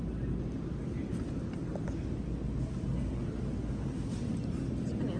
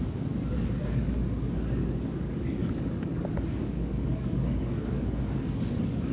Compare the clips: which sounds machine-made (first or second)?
second